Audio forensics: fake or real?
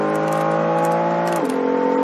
real